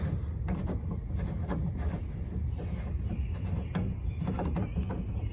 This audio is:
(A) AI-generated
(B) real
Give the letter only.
B